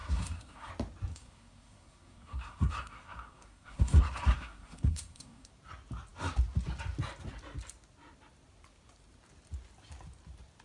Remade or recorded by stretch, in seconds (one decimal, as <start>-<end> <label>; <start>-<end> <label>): 0.0-0.7 remade; 0.7-1.1 recorded; 1.1-5.5 remade; 5.5-10.6 recorded